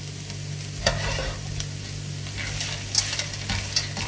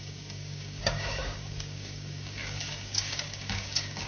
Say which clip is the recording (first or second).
first